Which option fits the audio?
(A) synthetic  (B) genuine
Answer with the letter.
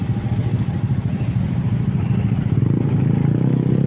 B